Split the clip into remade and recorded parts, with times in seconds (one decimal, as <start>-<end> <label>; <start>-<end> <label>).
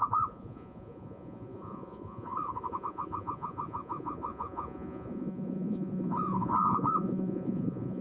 0.0-8.0 remade